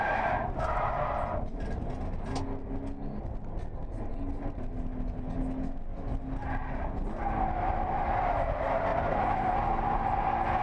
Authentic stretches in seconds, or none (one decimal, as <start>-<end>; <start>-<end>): 0.0-8.9; 9.6-10.6